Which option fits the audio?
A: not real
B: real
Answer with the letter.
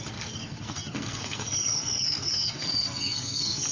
A